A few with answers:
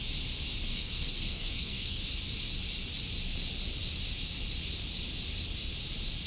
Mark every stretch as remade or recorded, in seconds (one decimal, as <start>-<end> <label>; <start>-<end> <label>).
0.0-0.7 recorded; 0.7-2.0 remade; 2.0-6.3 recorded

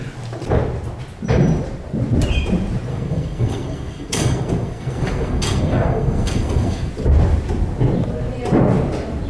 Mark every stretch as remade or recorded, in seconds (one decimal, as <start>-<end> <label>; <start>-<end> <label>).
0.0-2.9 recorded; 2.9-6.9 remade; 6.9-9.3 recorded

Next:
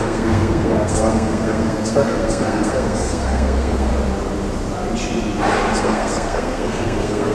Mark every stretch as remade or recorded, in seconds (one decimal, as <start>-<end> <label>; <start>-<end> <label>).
0.0-3.9 remade; 3.9-5.8 recorded; 5.8-7.3 remade

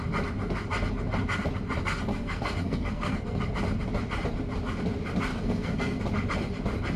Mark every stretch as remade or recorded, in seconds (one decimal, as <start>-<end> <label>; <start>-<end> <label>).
0.0-2.1 recorded; 2.1-3.4 remade; 3.4-5.3 recorded; 5.3-6.0 remade; 6.0-7.0 recorded